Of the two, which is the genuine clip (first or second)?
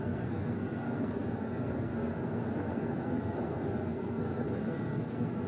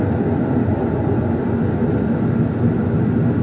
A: second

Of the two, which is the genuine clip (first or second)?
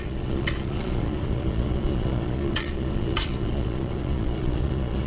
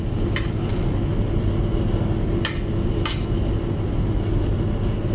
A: second